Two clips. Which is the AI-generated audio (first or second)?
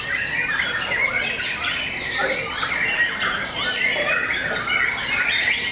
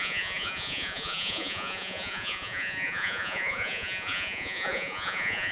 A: second